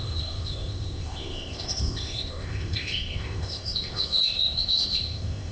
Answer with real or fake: fake